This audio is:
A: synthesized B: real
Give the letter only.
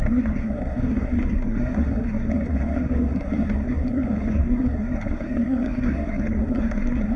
A